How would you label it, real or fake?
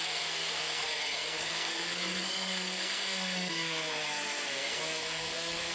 fake